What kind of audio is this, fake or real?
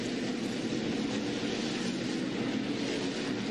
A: real